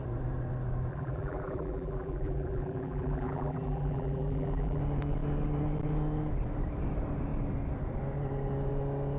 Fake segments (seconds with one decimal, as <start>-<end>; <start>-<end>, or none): 0.9-4.8